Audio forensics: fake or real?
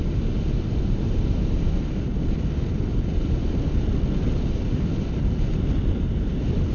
real